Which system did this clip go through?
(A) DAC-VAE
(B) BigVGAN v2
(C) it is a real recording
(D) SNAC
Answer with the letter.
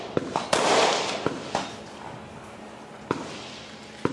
C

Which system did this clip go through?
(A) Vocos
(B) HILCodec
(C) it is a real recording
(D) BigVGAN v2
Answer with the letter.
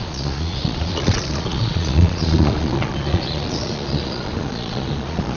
A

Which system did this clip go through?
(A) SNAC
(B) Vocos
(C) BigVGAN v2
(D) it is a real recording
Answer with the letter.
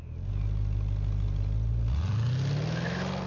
D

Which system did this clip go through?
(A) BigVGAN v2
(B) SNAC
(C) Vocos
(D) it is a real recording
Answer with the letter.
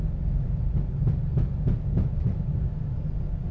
D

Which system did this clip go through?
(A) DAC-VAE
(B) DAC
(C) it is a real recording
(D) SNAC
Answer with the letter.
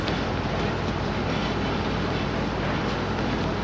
C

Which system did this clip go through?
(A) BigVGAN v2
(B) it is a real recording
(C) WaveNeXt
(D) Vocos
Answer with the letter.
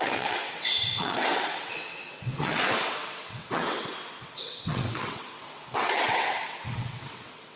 C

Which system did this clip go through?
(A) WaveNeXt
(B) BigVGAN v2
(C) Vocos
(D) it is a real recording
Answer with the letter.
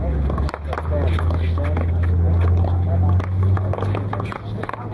D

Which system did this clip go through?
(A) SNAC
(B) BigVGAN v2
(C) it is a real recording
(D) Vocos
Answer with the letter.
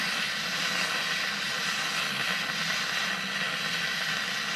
C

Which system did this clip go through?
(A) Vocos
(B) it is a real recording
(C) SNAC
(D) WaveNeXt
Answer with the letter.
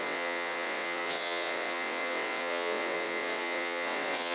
D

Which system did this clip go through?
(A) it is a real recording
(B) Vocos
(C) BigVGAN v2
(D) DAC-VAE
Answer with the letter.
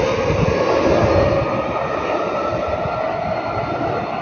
A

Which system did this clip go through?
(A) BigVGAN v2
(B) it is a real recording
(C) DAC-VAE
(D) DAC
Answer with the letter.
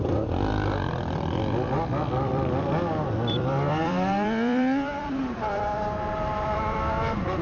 A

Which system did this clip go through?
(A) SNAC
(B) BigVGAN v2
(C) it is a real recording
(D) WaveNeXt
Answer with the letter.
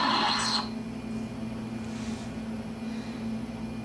C